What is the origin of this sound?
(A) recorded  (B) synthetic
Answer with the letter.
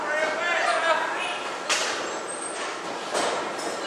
A